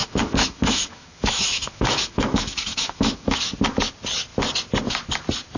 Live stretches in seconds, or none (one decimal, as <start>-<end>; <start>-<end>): 3.4-5.6